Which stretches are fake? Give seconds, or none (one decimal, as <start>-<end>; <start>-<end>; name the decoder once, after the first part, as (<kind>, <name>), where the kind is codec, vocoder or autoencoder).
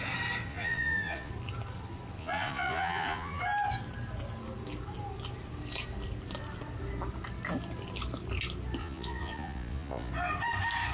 0.5-1.3 (vocoder, Vocos); 2.2-3.4; 8.8-10.1